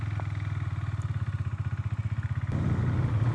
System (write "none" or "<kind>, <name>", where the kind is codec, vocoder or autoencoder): none